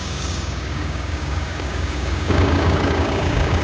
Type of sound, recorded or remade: remade